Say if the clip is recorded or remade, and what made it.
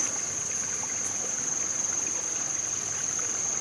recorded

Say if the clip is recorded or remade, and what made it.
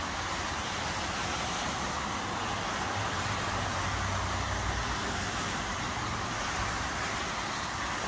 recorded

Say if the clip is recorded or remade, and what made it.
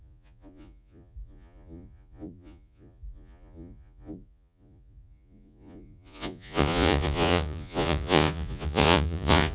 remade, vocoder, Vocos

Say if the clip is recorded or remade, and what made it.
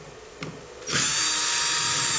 recorded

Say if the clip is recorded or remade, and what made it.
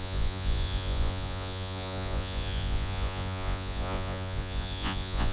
remade, vocoder, Vocos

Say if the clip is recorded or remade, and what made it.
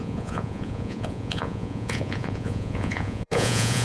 remade, vocoder, Vocos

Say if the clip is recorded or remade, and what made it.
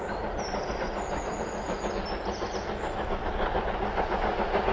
recorded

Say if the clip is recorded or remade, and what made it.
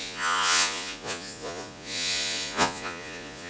remade, vocoder, Vocos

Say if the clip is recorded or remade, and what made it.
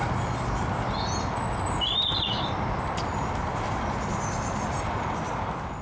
recorded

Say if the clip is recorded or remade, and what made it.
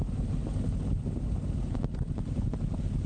recorded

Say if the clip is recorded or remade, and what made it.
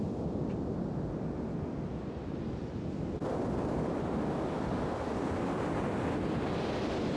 recorded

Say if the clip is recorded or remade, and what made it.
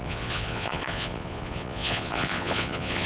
remade, vocoder, Vocos